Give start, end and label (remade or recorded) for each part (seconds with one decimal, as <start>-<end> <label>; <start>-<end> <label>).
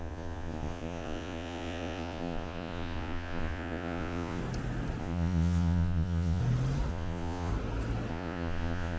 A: 0.0-4.4 remade; 4.4-5.0 recorded; 5.0-6.4 remade; 6.4-6.9 recorded; 6.9-7.5 remade; 7.5-8.1 recorded; 8.1-9.0 remade